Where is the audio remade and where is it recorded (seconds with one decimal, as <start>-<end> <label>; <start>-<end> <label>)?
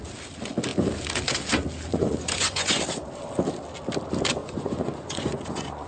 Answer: 0.0-1.9 recorded; 1.9-2.8 remade; 2.8-4.4 recorded; 4.4-5.9 remade